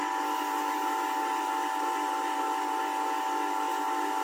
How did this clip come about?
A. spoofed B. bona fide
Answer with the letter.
B